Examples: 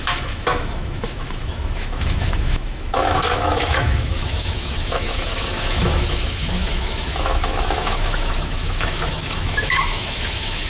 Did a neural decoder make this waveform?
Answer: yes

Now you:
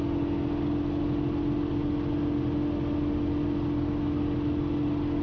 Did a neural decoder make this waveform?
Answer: no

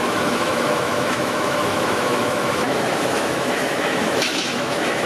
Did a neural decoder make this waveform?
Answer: yes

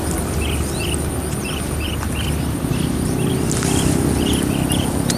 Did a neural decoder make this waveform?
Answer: no